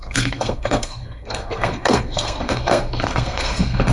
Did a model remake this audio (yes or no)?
yes